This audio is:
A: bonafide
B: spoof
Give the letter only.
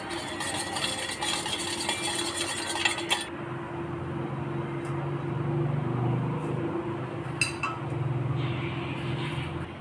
A